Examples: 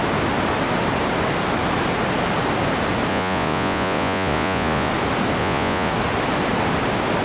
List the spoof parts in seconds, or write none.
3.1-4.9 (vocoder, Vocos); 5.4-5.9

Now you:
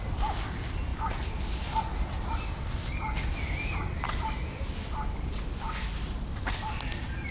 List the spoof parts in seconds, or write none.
none